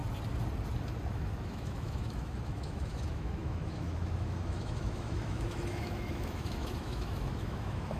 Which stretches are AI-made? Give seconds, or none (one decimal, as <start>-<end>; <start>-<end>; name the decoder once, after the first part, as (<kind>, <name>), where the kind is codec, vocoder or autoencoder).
1.1-8.0 (autoencoder, DAC-VAE)